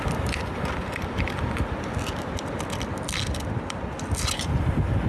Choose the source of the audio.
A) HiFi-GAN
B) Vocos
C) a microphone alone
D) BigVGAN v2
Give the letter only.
C